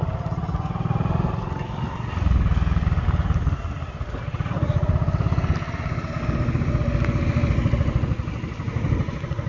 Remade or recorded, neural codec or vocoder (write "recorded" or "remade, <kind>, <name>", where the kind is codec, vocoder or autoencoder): recorded